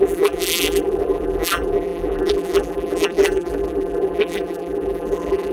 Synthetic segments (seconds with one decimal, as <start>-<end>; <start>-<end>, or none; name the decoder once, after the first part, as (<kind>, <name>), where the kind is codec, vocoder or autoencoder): 0.0-5.5 (vocoder, BigVGAN v2)